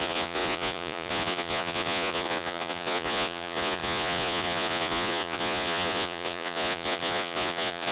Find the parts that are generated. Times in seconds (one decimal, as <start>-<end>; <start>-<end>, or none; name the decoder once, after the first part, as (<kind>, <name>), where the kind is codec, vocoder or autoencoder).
0.0-7.9 (vocoder, Vocos)